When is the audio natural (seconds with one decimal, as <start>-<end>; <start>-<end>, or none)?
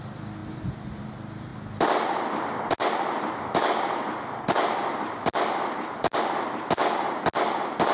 0.0-7.9